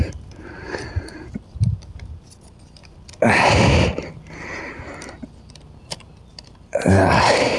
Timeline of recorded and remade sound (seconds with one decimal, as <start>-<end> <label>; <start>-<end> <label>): 0.0-2.8 recorded; 2.8-3.4 remade; 3.4-7.6 recorded